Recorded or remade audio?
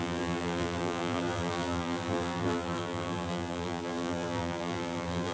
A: remade